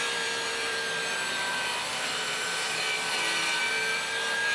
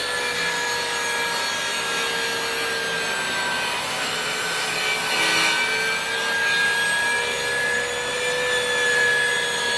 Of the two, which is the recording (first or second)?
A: second